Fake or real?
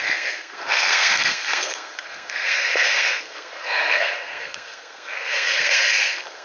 fake